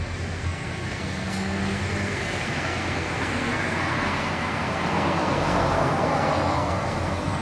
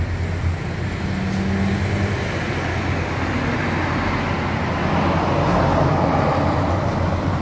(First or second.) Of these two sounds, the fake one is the first